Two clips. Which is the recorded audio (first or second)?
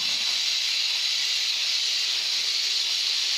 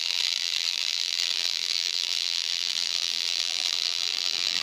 first